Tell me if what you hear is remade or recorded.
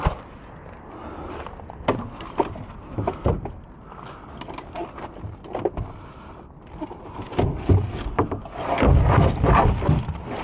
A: recorded